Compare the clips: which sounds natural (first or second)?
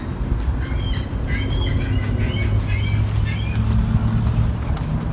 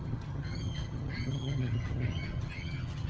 first